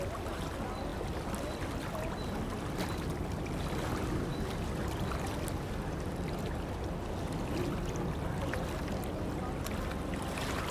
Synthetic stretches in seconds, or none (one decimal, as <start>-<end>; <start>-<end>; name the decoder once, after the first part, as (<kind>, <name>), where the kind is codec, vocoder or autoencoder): none